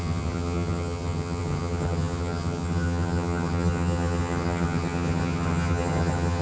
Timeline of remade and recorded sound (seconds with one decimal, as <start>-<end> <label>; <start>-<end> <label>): 0.0-6.4 remade